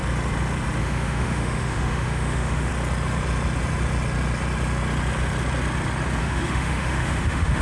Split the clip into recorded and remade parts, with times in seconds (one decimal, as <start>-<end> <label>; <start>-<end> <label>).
0.0-0.8 recorded; 0.8-2.7 remade; 2.7-6.2 recorded; 6.2-7.6 remade